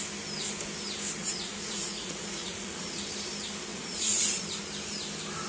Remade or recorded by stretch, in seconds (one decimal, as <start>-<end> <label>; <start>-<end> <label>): 0.0-1.2 recorded; 1.2-3.0 remade; 3.0-3.7 recorded; 3.7-4.6 remade; 4.6-5.5 recorded